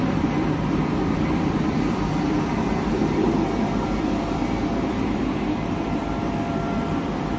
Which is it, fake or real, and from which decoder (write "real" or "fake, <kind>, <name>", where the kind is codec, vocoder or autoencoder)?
fake, vocoder, BigVGAN v2